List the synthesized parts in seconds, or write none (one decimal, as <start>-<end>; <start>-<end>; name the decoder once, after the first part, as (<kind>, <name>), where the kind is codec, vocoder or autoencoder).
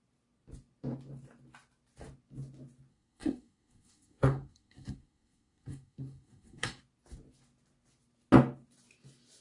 2.9-6.8 (codec, SNAC)